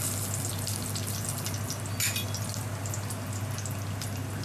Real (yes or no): yes